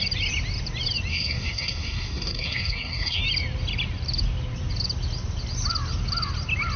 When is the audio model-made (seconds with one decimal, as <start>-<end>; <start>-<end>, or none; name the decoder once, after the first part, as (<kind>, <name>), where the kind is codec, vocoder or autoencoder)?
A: 1.1-3.2 (codec, SNAC)